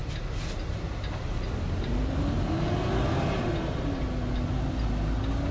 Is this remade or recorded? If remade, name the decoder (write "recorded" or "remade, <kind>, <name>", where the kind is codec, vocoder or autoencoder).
recorded